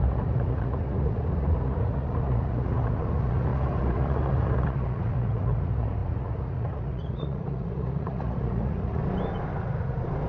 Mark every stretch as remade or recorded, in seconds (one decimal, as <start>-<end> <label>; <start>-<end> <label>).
0.0-9.0 remade; 9.0-10.3 recorded